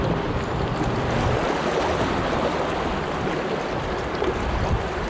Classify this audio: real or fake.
real